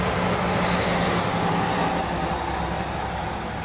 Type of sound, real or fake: real